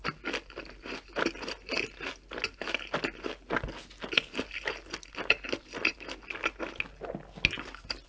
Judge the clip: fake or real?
real